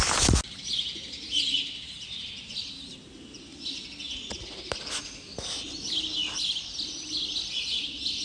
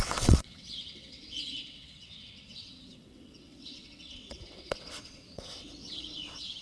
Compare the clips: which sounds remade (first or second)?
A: second